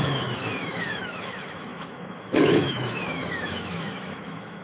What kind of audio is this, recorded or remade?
remade